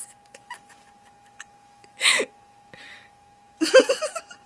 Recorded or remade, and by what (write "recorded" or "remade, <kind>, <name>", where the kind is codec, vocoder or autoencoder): remade, autoencoder, DAC-VAE